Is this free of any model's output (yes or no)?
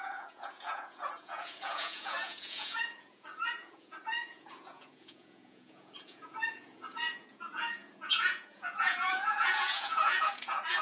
no